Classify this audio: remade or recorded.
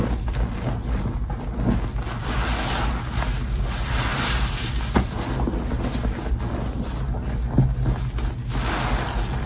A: recorded